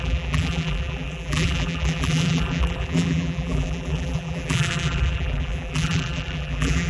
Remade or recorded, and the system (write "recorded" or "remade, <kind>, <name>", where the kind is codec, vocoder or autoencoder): remade, vocoder, BigVGAN v2